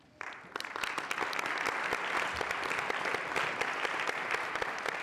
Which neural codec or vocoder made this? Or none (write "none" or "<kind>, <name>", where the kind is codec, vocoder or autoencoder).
none